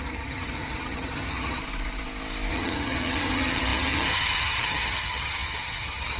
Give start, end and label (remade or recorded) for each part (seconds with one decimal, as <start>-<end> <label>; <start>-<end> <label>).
0.0-1.6 remade; 1.6-2.5 recorded; 2.5-6.2 remade